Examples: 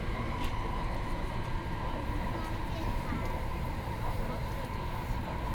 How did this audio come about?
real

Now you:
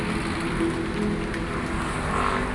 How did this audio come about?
real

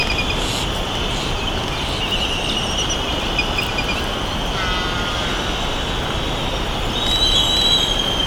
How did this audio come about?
real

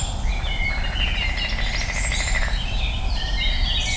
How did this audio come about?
real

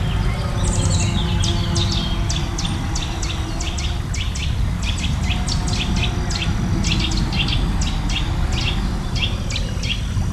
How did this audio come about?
real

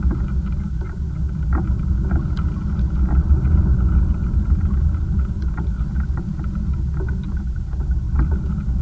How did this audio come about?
real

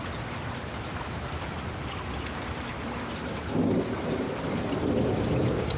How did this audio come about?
real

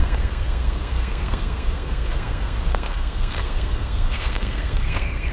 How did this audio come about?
fake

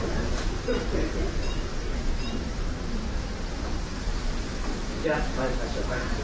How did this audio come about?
fake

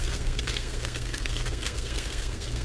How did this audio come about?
fake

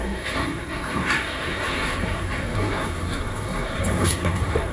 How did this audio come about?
fake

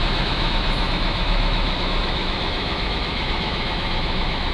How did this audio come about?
fake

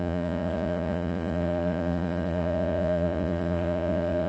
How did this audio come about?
fake